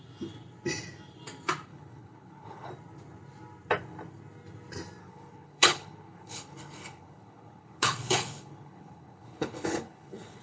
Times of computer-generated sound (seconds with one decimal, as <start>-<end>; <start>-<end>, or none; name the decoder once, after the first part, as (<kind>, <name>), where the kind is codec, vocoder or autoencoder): 1.7-2.7 (codec, HILCodec); 5.0-10.4